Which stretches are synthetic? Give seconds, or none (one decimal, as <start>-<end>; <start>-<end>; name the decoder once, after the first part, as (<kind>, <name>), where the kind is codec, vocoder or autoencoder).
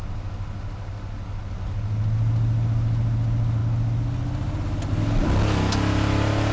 none